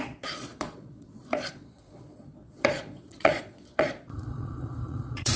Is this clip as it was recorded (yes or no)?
no